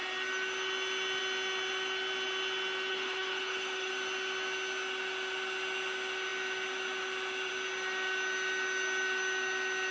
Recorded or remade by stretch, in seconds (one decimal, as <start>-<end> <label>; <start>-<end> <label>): 0.0-2.9 recorded; 2.9-3.9 remade; 3.9-9.9 recorded